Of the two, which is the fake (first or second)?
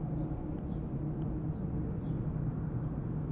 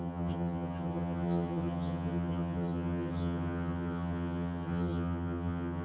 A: second